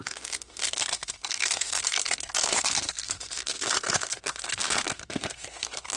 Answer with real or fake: fake